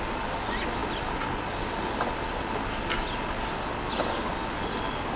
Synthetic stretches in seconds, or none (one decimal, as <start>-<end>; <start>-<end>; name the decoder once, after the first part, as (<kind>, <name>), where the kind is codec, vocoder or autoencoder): none